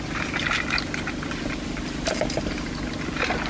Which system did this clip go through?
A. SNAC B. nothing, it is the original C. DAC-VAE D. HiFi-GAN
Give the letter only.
B